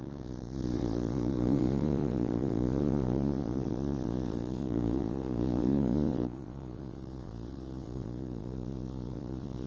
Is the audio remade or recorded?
remade